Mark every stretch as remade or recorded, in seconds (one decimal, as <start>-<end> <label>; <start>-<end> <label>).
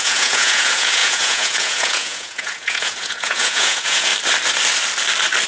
0.0-4.1 remade; 4.1-5.5 recorded